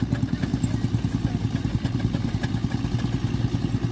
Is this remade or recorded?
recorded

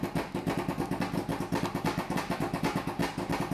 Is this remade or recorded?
recorded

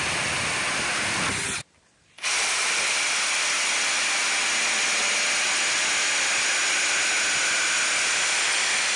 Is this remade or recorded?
recorded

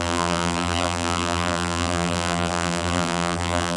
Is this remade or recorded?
remade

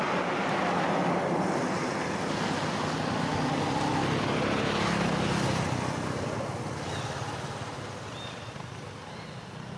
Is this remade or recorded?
recorded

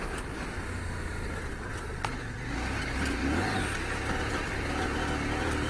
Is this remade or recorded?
recorded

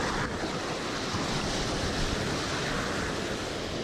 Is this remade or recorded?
recorded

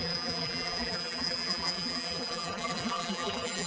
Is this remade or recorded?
remade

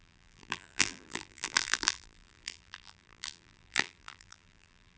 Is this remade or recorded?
remade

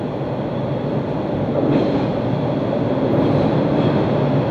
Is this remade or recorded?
recorded